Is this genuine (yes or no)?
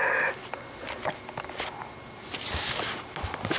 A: yes